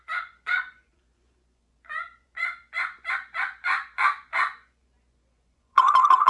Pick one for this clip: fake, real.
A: fake